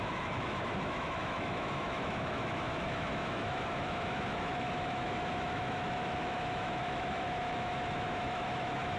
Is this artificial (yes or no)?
yes